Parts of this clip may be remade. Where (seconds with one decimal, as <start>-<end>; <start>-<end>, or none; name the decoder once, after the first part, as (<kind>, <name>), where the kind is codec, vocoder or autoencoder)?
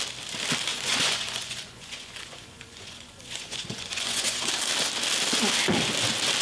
0.7-4.5 (vocoder, Vocos)